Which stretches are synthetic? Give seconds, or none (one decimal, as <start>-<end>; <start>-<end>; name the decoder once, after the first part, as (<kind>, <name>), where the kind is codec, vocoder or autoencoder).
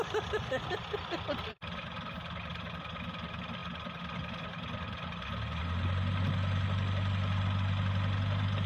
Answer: none